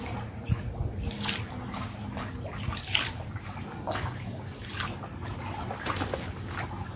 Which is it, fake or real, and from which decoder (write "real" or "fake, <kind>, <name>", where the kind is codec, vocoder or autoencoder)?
real